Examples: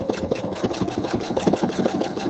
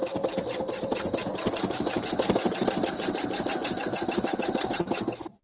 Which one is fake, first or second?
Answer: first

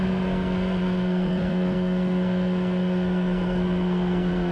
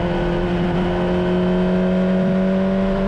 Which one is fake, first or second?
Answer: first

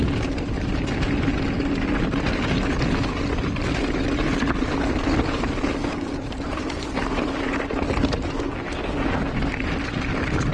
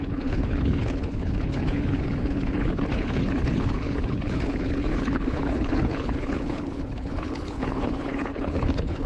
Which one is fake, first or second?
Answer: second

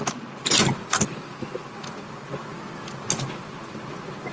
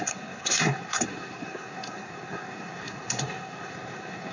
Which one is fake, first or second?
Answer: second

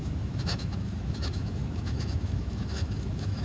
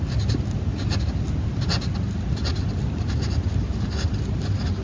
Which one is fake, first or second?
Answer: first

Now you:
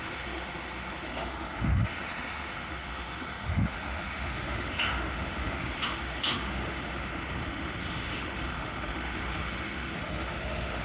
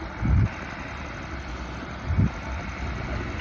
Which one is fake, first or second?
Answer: first